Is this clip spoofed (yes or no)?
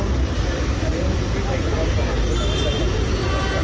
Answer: no